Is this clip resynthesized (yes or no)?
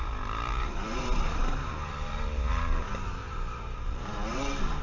yes